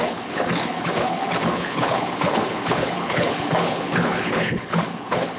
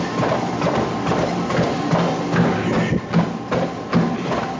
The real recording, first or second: second